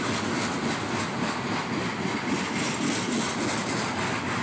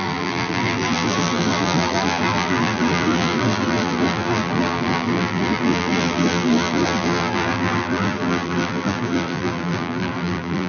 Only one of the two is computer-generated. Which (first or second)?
second